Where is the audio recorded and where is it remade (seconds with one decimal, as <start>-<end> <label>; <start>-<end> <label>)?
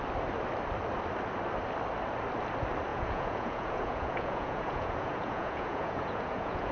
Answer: 0.0-2.9 recorded; 2.9-6.7 remade